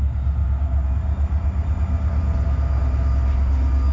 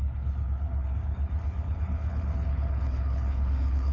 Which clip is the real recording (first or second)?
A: first